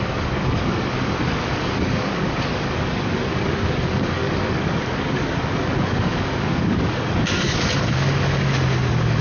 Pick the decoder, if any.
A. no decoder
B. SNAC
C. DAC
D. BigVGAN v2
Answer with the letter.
C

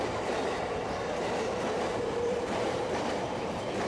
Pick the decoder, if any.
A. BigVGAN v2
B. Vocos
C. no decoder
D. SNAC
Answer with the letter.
A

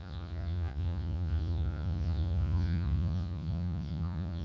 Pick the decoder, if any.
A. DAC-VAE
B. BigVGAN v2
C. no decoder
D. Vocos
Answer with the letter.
D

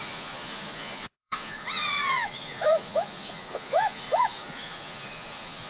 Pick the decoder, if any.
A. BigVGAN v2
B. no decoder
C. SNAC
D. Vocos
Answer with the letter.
D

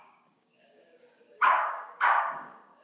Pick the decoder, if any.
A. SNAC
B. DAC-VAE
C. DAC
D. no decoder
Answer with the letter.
C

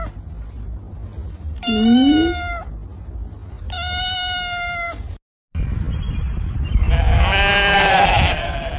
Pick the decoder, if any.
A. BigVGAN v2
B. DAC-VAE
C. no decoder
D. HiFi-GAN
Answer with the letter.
C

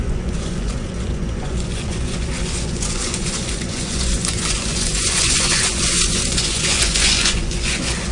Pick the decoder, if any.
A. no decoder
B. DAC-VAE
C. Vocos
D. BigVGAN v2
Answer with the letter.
C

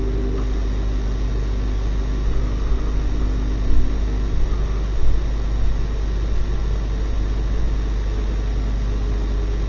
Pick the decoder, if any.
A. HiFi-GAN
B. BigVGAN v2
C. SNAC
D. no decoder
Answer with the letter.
D